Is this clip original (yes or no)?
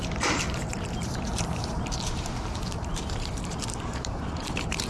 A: no